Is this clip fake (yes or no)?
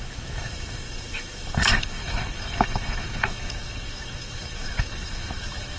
yes